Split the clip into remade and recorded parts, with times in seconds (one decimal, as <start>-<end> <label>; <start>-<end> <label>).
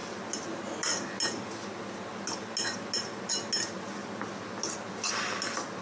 0.0-5.8 recorded